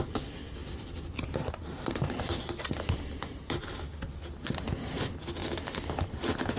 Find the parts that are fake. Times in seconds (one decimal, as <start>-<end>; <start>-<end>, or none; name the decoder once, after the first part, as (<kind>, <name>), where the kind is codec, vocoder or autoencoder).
0.6-4.2 (vocoder, BigVGAN v2)